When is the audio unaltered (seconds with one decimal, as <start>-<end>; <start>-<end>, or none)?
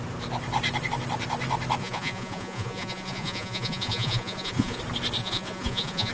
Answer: 0.0-1.8; 4.8-5.2